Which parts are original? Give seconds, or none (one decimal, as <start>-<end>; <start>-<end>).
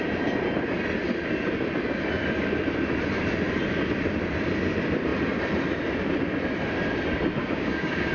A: 0.0-7.4